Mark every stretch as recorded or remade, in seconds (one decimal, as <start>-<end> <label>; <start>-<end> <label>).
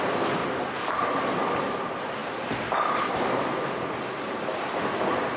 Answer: 0.0-5.4 recorded